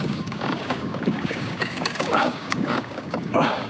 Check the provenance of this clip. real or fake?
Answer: fake